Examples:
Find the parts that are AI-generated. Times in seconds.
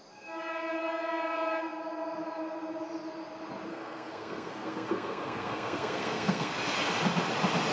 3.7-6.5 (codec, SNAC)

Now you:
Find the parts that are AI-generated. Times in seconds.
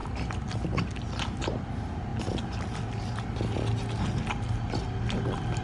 none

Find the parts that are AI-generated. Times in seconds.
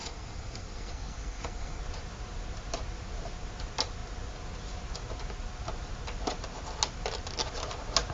0.0-1.8 (codec, SNAC)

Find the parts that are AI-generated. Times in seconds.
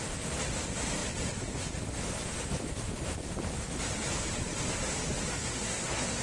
5.3-6.2 (codec, SNAC)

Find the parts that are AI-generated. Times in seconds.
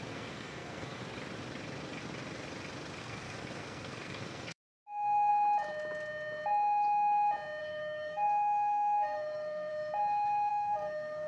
0.0-1.0 (codec, SNAC); 3.0-5.3; 7.6-9.7; 10.5-11.3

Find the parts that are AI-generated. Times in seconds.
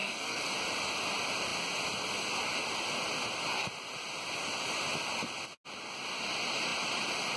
0.0-0.5 (codec, SNAC)